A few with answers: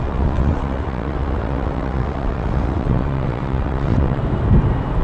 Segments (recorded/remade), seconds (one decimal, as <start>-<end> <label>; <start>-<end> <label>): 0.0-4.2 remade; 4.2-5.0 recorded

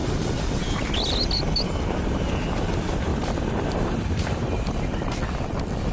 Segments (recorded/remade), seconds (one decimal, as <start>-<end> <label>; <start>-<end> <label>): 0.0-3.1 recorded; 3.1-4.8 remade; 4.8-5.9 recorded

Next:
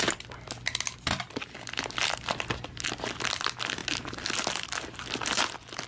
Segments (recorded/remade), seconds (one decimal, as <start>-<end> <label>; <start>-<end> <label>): 0.0-5.9 recorded

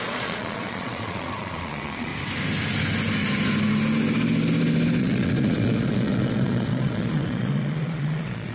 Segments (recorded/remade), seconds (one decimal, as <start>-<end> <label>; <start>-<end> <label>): 0.0-2.1 remade; 2.1-5.0 recorded; 5.0-8.5 remade